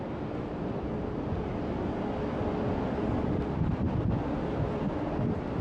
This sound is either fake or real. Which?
real